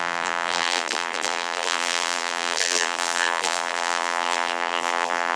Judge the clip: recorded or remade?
remade